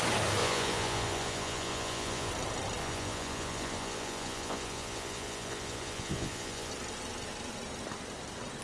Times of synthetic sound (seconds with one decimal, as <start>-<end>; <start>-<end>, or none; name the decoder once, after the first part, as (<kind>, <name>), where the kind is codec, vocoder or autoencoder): 0.4-2.3 (vocoder, Vocos); 2.8-6.7